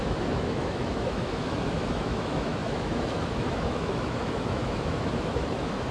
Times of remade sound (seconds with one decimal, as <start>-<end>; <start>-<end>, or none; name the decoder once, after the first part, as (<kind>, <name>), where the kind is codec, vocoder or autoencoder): 0.0-5.9 (autoencoder, DAC-VAE)